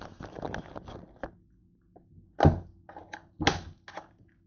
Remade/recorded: recorded